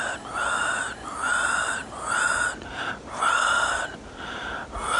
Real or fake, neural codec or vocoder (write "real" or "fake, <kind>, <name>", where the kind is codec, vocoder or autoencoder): real